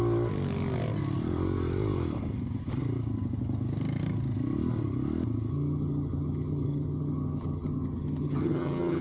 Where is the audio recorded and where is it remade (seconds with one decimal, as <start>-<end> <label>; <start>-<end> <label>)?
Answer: 0.0-5.5 recorded; 5.5-9.0 remade